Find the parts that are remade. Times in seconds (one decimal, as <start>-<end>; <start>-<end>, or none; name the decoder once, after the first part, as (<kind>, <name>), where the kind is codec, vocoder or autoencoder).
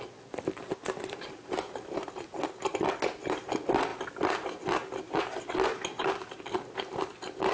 none